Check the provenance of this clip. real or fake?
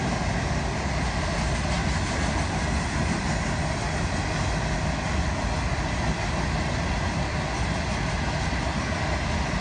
real